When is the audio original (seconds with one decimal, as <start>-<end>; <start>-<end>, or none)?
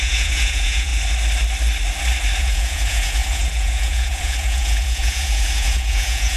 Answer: 0.9-2.4